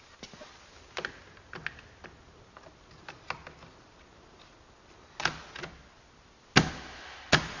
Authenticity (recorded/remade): recorded